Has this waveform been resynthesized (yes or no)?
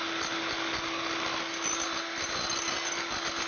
no